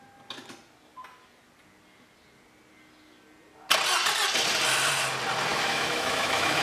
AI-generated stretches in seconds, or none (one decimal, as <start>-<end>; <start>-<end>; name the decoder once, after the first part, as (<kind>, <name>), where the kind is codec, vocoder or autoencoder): 5.5-6.6 (autoencoder, DAC-VAE)